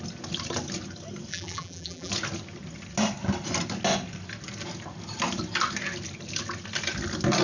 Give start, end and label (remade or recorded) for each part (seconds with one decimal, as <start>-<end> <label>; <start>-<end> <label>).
0.0-1.3 recorded; 1.3-2.1 remade; 2.1-7.4 recorded